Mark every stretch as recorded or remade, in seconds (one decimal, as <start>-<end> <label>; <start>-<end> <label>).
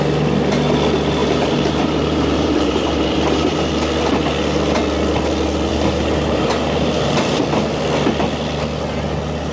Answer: 0.0-1.2 recorded; 1.2-3.7 remade; 3.7-5.7 recorded; 5.7-7.4 remade; 7.4-9.5 recorded